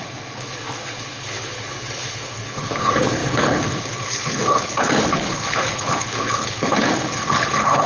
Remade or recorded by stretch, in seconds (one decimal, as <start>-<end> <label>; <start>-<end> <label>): 0.0-7.9 remade